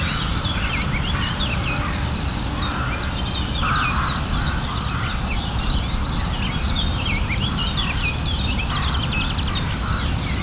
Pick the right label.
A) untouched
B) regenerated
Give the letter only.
A